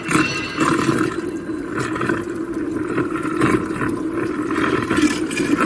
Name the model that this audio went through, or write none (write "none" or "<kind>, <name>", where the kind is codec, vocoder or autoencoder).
none